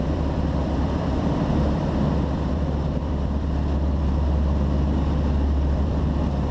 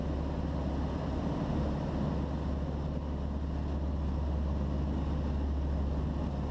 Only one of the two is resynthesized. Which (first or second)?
first